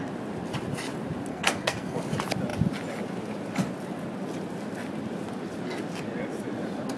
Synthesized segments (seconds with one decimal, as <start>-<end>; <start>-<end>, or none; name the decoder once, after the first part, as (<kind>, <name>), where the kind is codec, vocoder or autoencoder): 1.3-2.0 (codec, SNAC)